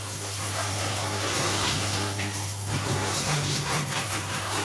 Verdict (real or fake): fake